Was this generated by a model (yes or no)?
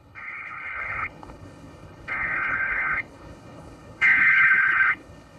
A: yes